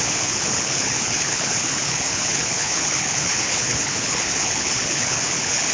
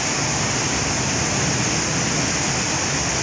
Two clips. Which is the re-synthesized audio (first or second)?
first